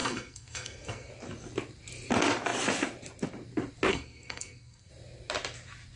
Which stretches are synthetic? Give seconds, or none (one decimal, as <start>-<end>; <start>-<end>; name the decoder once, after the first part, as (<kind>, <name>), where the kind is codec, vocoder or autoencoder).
0.0-1.1 (codec, SNAC); 3.9-4.9